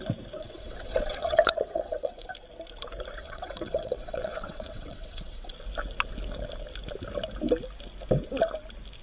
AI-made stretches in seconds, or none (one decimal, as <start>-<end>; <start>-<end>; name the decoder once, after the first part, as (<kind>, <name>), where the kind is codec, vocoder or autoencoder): 0.4-2.3 (vocoder, WaveNeXt); 3.2-5.5